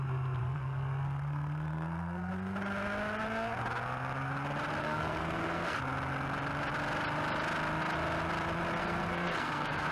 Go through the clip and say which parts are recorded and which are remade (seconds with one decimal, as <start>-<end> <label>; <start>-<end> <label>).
0.0-0.4 recorded; 0.4-2.3 remade; 2.3-4.8 recorded; 4.8-5.8 remade; 5.8-8.8 recorded; 8.8-9.9 remade